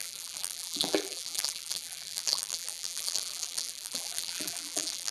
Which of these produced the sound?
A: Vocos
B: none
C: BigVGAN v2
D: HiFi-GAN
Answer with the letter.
C